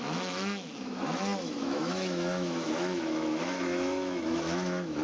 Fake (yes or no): yes